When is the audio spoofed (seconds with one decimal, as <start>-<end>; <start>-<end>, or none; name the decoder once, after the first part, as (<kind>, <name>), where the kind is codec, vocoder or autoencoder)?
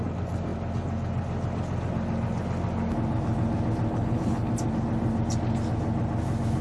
3.9-4.5 (codec, HILCodec)